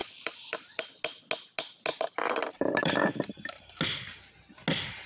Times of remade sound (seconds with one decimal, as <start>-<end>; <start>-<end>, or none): 0.0-0.8; 1.9-3.8